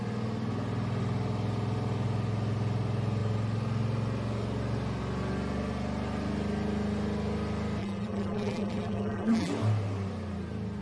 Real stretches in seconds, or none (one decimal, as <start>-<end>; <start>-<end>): 0.0-7.8; 9.5-10.8